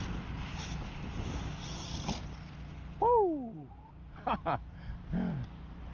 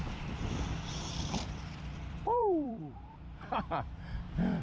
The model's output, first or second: second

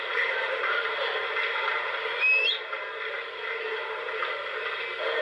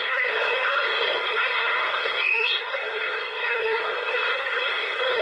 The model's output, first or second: second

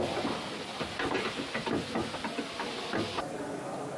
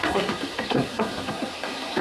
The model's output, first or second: second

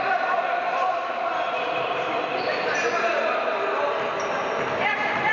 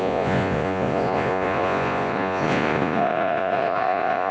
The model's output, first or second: second